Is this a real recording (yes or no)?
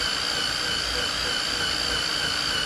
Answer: yes